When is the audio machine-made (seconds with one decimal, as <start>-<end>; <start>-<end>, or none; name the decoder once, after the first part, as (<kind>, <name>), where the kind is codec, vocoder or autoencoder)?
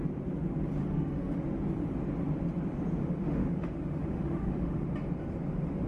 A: 0.8-1.4 (autoencoder, DAC-VAE); 3.0-4.8